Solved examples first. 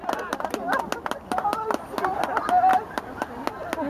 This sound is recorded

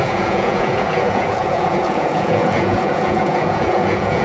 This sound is remade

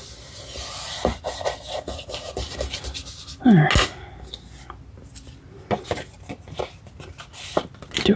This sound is recorded